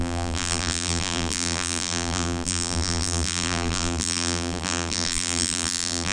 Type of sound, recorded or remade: remade